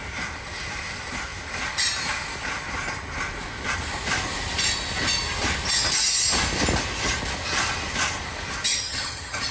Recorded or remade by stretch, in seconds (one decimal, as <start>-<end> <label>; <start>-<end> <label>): 0.0-8.7 recorded; 8.7-9.5 remade